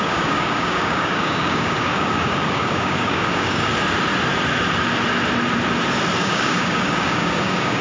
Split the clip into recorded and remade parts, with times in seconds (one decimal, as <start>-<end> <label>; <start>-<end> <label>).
0.0-3.7 remade; 3.7-6.2 recorded; 6.2-7.8 remade